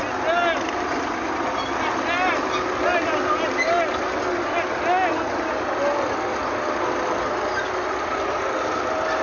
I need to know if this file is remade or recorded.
recorded